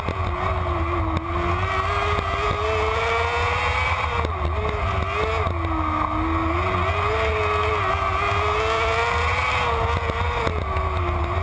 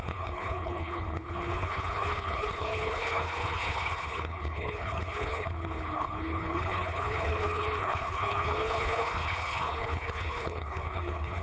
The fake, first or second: second